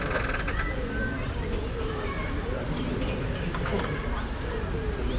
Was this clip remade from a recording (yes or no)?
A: no